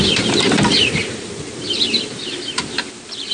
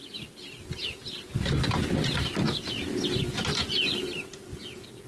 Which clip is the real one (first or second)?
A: second